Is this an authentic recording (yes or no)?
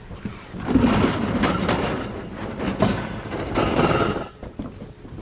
yes